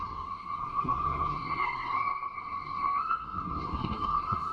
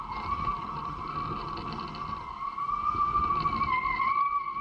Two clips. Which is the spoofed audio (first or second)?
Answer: first